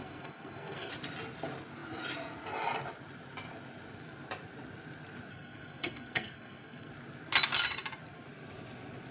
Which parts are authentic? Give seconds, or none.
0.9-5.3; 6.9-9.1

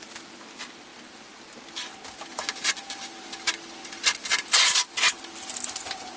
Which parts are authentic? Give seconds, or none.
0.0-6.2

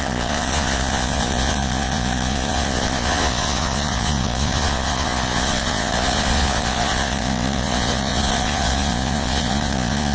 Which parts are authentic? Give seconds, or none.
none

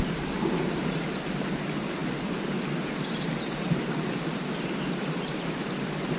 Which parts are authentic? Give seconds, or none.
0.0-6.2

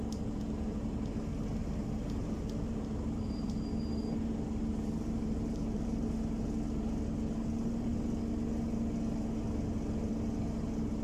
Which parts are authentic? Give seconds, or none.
0.0-1.6; 3.5-4.7; 6.2-11.0

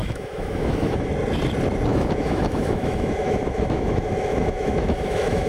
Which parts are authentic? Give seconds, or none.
1.1-1.9